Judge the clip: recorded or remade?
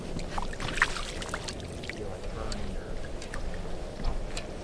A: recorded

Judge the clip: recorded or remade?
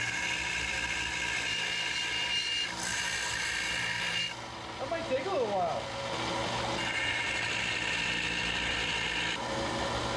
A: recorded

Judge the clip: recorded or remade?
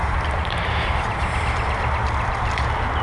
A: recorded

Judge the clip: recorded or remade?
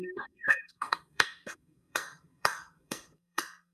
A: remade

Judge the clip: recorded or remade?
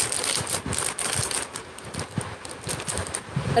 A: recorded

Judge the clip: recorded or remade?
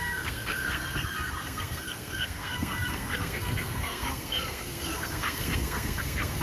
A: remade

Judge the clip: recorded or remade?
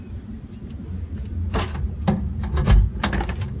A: recorded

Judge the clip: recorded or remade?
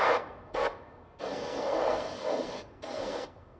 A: remade